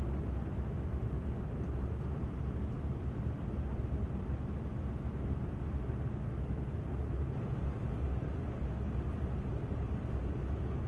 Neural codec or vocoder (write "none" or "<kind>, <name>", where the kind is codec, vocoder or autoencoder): none